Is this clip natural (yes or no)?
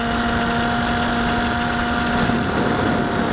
yes